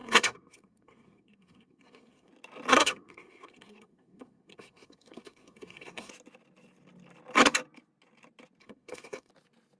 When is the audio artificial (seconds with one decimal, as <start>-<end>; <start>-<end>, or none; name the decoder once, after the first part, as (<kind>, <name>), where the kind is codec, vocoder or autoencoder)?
0.0-2.3 (codec, SNAC); 2.7-6.1; 8.6-9.3

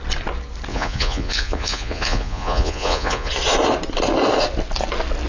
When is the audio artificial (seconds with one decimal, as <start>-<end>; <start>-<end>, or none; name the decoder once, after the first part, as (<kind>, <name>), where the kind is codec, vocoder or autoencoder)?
0.7-3.3 (vocoder, Vocos)